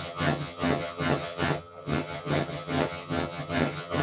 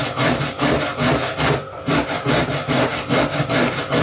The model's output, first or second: first